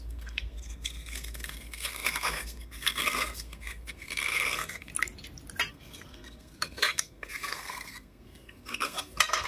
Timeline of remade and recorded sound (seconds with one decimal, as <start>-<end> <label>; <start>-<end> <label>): 0.0-4.9 remade; 4.9-5.7 recorded; 5.7-9.5 remade